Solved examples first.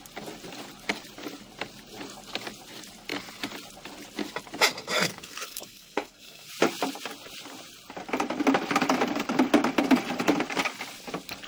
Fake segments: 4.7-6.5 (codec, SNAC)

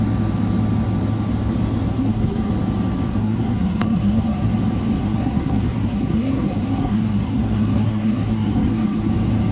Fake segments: 2.0-2.5 (codec, SNAC); 3.1-4.5; 5.0-9.1

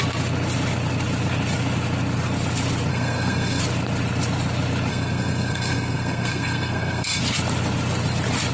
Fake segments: 2.9-3.6 (codec, SNAC); 4.9-7.2

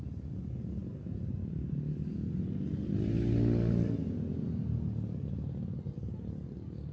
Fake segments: none